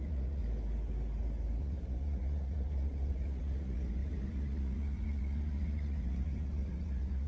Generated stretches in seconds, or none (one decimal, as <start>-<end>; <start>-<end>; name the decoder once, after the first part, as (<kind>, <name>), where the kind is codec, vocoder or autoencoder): 0.0-0.4 (vocoder, Vocos); 1.6-7.3